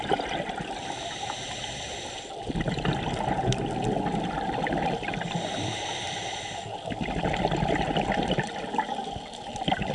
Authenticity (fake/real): real